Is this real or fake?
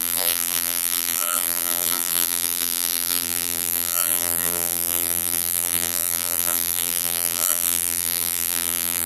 fake